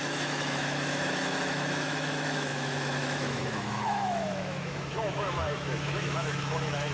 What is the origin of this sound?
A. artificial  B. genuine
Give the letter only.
A